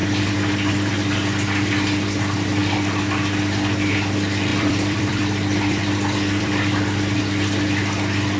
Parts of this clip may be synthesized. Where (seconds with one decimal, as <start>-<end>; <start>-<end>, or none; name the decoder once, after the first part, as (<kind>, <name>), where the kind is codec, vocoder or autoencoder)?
0.0-0.9 (vocoder, BigVGAN v2); 4.5-7.2

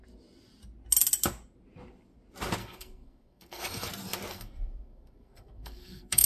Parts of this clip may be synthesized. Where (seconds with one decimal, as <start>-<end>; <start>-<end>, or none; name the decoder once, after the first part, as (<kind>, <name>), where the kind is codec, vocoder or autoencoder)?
2.6-3.9 (codec, SNAC); 4.3-6.3

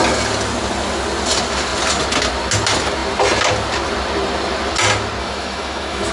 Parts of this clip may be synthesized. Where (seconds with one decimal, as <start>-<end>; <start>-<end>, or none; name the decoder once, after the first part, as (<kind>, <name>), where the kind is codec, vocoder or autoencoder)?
5.2-6.1 (autoencoder, DAC-VAE)

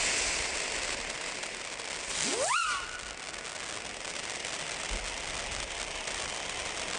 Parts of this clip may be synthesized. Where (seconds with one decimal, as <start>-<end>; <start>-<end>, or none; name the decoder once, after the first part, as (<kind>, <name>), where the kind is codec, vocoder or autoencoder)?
none

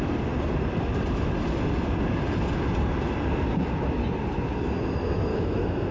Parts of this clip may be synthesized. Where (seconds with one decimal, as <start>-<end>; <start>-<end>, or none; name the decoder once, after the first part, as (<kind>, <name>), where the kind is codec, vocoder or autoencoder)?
5.3-5.9 (autoencoder, DAC-VAE)

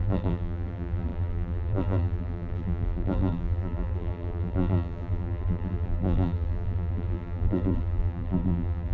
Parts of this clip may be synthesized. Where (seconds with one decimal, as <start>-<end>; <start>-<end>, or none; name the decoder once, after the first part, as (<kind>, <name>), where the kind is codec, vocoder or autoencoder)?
0.0-8.9 (vocoder, BigVGAN v2)

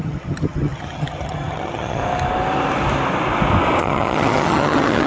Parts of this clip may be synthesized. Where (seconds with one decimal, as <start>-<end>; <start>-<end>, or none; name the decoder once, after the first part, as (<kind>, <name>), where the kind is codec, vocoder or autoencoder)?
0.0-2.0 (vocoder, HiFi-GAN); 3.8-5.1